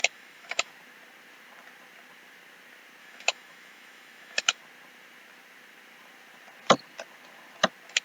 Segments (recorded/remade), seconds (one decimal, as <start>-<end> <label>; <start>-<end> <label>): 0.0-0.7 remade; 0.7-3.0 recorded; 3.0-4.6 remade; 4.6-8.0 recorded